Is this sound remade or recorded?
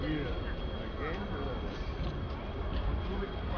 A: recorded